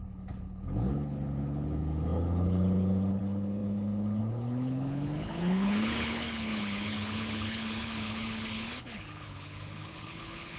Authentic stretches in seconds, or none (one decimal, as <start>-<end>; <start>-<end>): none